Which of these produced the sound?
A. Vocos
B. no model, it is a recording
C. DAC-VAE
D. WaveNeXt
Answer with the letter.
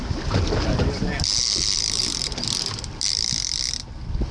B